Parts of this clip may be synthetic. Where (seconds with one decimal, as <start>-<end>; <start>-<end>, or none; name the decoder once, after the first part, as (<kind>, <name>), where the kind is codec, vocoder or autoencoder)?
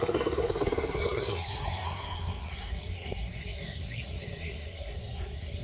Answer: 0.0-5.6 (codec, SNAC)